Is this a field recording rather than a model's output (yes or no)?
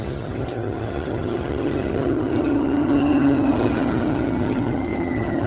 no